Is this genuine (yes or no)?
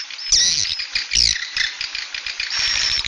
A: yes